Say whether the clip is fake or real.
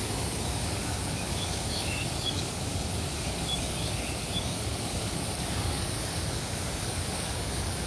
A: fake